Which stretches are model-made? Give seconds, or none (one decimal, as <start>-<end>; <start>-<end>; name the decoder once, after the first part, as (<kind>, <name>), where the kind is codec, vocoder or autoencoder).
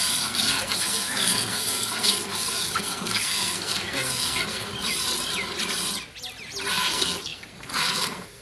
0.0-4.7 (codec, SNAC); 6.7-8.4